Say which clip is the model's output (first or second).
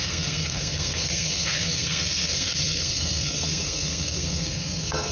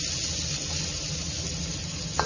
first